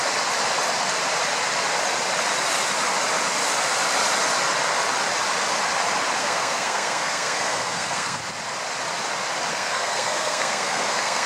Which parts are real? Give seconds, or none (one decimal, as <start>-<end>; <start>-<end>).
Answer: 0.0-6.2; 8.2-9.5